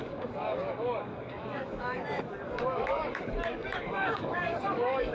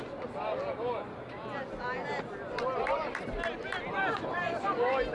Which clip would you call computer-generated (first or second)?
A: first